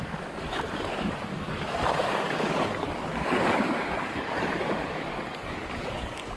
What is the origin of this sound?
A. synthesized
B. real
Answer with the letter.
A